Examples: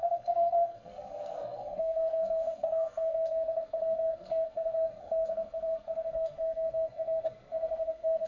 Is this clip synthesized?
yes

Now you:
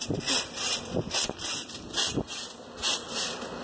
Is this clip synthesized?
no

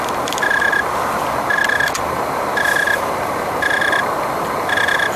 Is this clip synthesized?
no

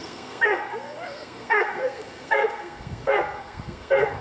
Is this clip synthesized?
yes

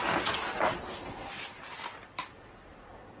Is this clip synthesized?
no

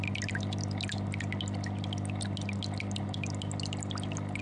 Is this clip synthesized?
no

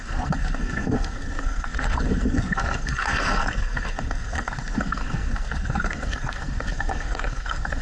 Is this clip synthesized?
yes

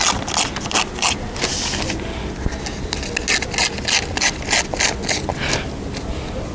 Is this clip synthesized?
no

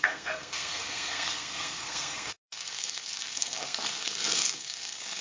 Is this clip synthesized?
yes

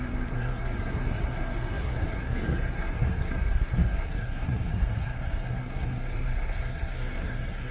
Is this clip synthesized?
yes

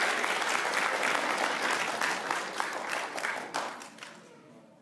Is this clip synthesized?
no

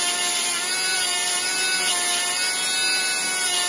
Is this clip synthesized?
no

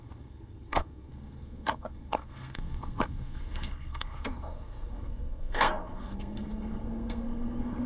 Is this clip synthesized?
yes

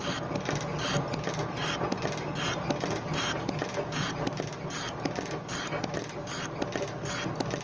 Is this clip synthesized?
no